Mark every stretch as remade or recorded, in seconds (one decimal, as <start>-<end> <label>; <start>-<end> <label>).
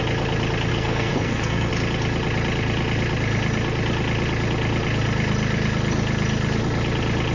0.0-0.7 recorded; 0.7-1.7 remade; 1.7-7.3 recorded